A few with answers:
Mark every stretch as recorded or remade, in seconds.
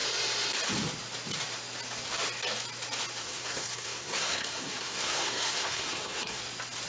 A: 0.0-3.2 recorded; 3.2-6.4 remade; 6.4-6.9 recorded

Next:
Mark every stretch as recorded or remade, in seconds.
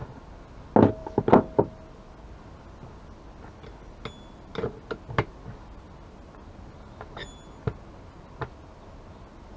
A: 0.0-9.6 recorded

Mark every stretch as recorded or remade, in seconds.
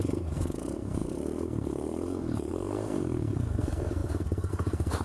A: 0.0-5.0 remade